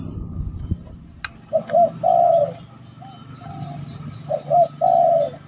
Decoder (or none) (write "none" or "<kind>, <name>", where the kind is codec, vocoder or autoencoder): none